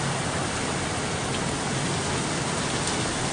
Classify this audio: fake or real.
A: real